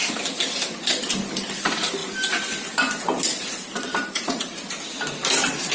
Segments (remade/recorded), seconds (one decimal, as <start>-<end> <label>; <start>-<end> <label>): 0.0-3.5 recorded; 3.5-4.8 remade; 4.8-5.7 recorded